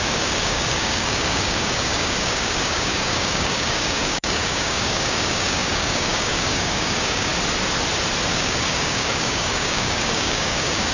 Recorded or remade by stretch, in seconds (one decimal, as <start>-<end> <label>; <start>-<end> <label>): 0.0-7.3 remade; 7.3-8.3 recorded; 8.3-10.9 remade